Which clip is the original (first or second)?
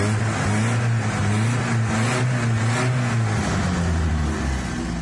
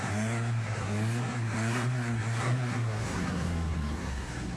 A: first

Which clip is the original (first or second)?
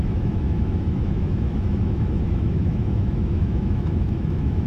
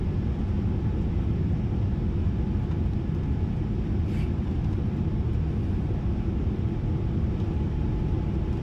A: second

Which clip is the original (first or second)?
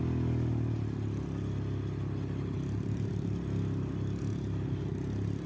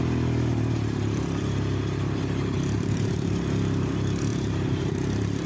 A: first